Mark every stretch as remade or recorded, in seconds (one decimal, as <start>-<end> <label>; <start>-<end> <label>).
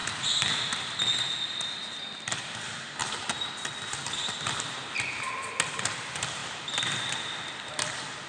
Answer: 0.0-1.2 recorded; 1.2-8.3 remade